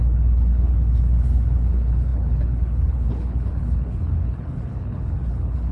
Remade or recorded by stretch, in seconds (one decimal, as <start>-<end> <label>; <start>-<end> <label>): 0.0-5.7 remade

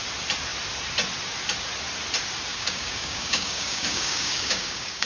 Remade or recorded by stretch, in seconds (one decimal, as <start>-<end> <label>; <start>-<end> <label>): 0.0-2.5 recorded; 2.5-5.1 remade

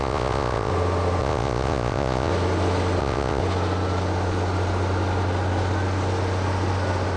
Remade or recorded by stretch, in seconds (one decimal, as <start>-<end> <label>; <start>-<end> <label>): 0.0-0.7 remade; 0.7-1.2 recorded; 1.2-2.3 remade; 2.3-3.0 recorded; 3.0-3.4 remade; 3.4-7.2 recorded

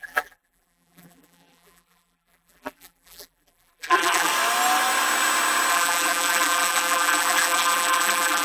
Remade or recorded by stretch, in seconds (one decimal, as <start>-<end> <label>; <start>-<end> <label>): 0.0-4.3 remade; 4.3-5.7 recorded; 5.7-8.4 remade

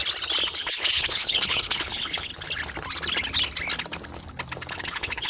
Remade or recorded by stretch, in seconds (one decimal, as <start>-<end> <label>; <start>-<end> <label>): 0.0-0.6 recorded; 0.6-2.3 remade; 2.3-4.7 recorded; 4.7-5.3 remade

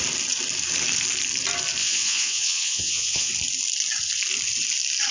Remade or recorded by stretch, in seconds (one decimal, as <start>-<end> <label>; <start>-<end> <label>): 0.0-1.8 recorded; 1.8-3.3 remade; 3.3-5.1 recorded

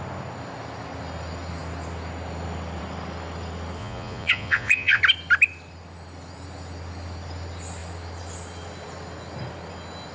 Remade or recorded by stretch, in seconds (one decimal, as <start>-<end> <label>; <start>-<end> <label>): 0.0-3.8 recorded; 3.8-5.0 remade; 5.0-10.1 recorded